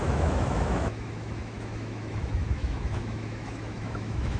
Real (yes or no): no